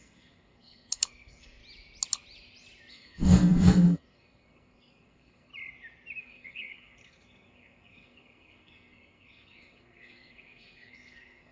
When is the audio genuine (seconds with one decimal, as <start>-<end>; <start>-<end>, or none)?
1.6-2.9; 5.5-6.2

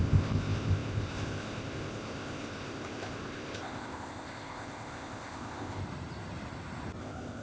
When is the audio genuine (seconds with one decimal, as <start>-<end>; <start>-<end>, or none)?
5.8-7.0

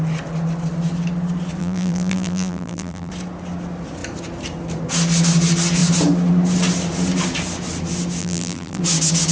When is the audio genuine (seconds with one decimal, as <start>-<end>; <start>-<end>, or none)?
0.0-1.6; 3.1-8.2; 8.8-9.3